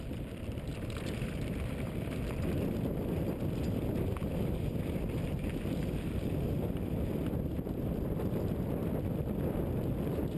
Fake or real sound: fake